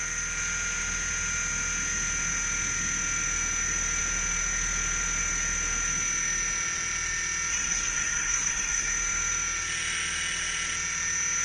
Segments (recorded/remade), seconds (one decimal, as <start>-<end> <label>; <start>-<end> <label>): 0.0-7.5 recorded; 7.5-8.9 remade; 8.9-11.4 recorded